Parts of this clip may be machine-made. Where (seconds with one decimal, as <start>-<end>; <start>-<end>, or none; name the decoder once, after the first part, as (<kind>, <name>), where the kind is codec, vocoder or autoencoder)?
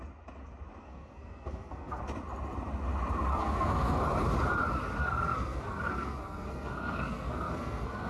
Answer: 0.8-2.0 (codec, SNAC); 3.3-4.0; 5.0-8.1